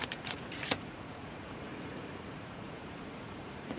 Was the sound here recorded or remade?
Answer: remade